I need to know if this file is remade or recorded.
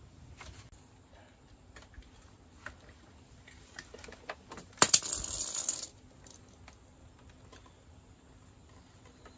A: recorded